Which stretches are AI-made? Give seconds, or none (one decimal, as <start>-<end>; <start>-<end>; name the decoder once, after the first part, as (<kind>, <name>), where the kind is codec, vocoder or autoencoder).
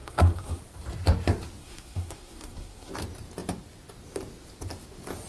0.0-0.6 (codec, SNAC); 1.6-2.9